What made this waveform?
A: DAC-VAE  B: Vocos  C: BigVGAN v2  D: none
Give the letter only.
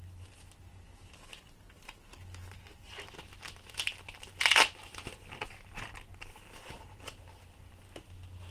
D